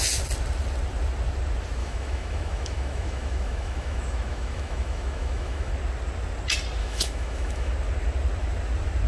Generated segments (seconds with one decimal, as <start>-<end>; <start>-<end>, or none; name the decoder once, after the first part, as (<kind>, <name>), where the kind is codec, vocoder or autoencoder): 1.8-5.7 (autoencoder, DAC-VAE); 6.8-7.7